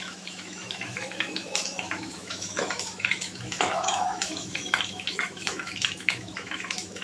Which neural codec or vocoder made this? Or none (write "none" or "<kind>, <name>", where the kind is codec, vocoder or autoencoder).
autoencoder, DAC-VAE